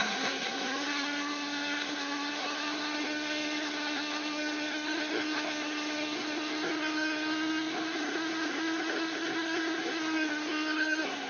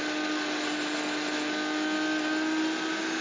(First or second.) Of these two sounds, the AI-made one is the first